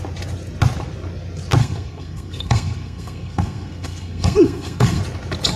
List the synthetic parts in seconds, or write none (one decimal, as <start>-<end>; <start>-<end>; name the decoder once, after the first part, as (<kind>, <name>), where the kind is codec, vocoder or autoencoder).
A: 1.6-5.0 (codec, SNAC)